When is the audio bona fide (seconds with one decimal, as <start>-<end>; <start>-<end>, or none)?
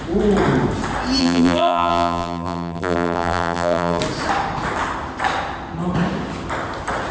0.0-1.2; 4.0-7.1